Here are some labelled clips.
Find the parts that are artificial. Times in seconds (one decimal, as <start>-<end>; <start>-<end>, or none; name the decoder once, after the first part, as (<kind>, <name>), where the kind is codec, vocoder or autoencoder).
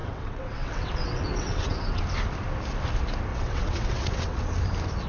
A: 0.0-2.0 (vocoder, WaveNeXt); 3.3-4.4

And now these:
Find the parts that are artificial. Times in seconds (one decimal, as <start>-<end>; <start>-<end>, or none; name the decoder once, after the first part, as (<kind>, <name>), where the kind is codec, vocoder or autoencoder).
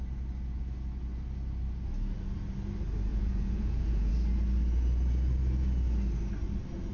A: 3.1-4.1 (vocoder, Vocos)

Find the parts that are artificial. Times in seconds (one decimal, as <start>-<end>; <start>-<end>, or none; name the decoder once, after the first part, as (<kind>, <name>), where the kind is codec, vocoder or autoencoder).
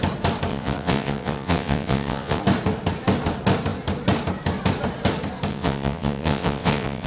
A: 0.5-2.4 (vocoder, WaveNeXt); 5.5-7.1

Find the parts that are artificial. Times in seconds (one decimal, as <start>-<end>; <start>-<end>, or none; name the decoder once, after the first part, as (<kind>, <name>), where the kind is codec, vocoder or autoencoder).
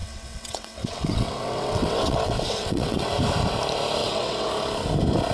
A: 0.0-3.1 (vocoder, WaveNeXt); 4.0-4.5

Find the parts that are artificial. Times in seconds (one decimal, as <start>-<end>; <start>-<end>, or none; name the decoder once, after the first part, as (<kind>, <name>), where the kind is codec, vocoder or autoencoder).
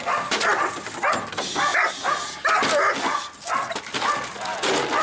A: none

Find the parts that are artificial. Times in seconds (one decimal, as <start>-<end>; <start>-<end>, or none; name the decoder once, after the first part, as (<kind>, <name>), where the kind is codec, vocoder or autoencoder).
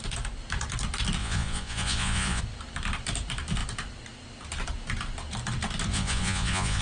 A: 1.2-2.4 (vocoder, Vocos); 5.9-6.8